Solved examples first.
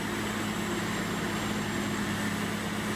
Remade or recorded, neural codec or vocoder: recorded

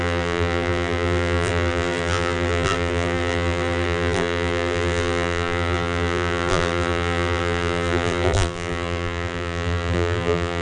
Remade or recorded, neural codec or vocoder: remade, vocoder, BigVGAN v2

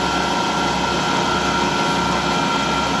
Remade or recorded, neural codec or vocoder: recorded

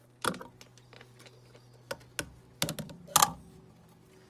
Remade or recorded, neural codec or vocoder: recorded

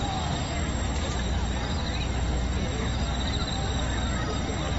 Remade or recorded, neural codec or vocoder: recorded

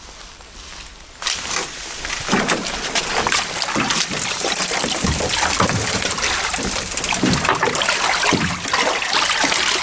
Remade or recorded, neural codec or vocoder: recorded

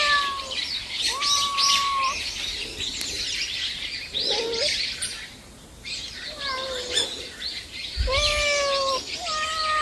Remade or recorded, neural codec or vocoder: recorded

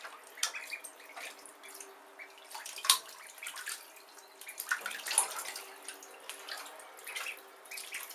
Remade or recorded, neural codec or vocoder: recorded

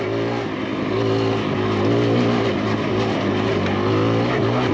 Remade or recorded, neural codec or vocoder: recorded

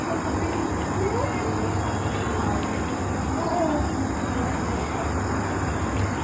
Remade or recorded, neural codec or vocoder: recorded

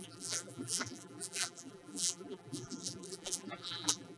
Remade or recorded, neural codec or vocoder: remade, vocoder, BigVGAN v2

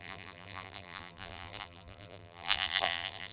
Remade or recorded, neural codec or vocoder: remade, vocoder, BigVGAN v2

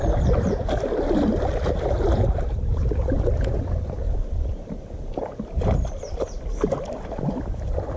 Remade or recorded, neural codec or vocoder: recorded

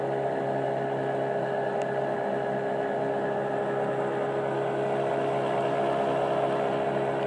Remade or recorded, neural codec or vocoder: recorded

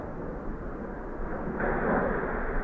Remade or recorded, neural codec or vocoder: recorded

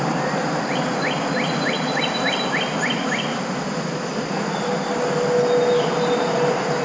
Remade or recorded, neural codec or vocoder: recorded